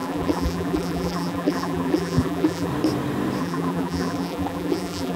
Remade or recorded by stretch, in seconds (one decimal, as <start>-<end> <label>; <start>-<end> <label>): 0.0-2.7 remade; 2.7-3.4 recorded; 3.4-5.2 remade